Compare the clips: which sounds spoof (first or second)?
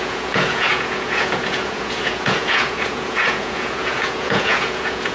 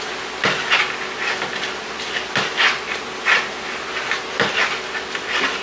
first